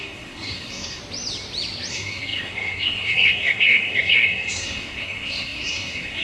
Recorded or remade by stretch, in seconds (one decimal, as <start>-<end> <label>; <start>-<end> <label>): 0.0-1.0 remade; 1.0-1.9 recorded; 1.9-6.2 remade